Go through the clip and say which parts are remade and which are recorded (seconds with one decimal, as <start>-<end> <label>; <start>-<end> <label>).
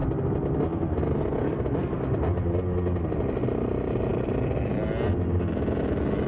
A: 0.0-6.3 recorded